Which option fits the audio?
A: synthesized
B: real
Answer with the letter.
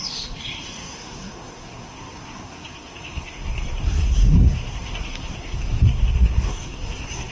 A